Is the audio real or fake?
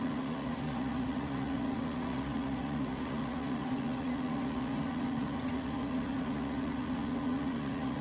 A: fake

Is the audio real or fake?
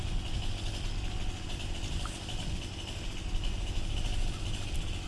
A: real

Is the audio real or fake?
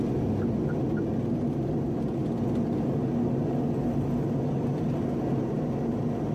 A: real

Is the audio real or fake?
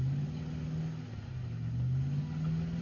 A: real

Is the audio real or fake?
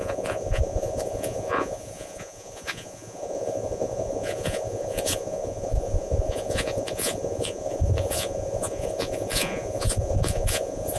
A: fake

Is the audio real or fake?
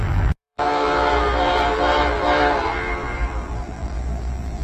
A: fake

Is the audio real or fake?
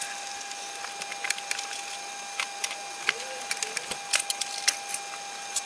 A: real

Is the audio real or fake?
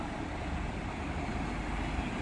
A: real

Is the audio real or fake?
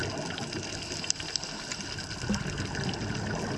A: real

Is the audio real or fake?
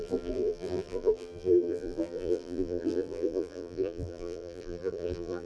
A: fake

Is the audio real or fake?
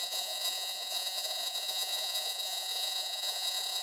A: fake